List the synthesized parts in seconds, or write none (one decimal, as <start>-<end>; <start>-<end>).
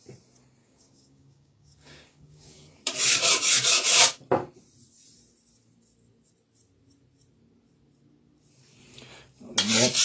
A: 0.6-4.2